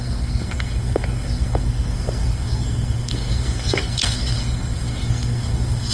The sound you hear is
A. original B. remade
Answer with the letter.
B